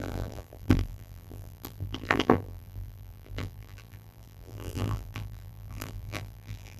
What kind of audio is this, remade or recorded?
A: remade